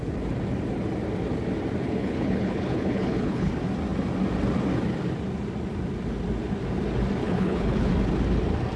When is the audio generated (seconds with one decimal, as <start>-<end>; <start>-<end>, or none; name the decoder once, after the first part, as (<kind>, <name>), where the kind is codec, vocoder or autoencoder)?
1.8-3.5 (codec, HILCodec); 7.2-7.9